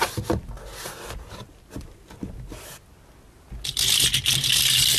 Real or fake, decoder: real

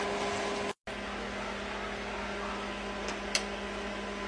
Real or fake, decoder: real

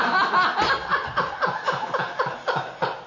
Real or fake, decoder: real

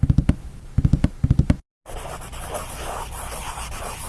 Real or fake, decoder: real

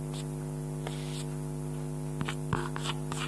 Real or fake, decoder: real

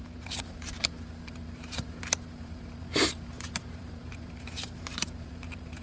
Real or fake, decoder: fake, vocoder, BigVGAN v2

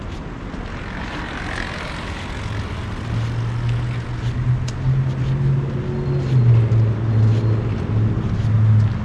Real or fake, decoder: real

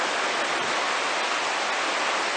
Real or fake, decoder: real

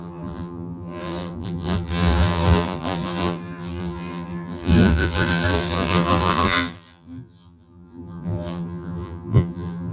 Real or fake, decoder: fake, vocoder, BigVGAN v2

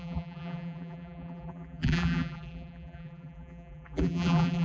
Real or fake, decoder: fake, vocoder, BigVGAN v2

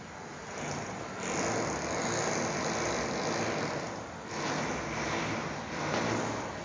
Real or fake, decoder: real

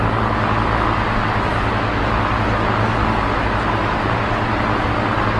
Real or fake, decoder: real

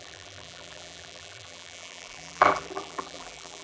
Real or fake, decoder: fake, vocoder, BigVGAN v2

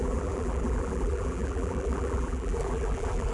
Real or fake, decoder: fake, vocoder, BigVGAN v2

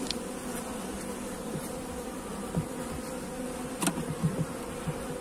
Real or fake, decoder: real